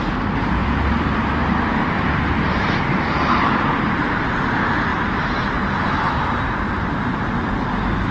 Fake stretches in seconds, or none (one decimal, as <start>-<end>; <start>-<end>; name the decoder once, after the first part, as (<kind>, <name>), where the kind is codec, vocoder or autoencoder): 0.6-2.8 (vocoder, BigVGAN v2); 4.9-6.6